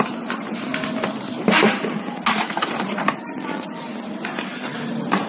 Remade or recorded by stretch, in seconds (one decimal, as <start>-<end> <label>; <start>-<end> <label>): 0.0-5.3 recorded